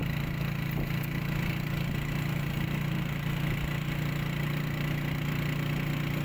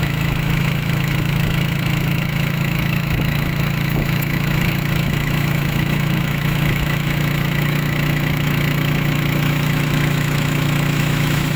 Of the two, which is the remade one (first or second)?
second